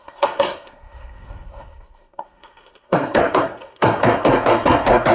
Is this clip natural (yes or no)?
no